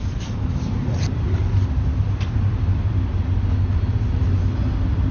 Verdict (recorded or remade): recorded